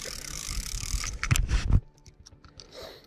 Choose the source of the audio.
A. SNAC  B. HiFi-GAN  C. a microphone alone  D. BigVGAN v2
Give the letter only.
C